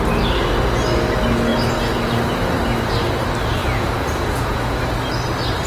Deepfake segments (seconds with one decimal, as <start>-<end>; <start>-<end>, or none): 3.6-4.7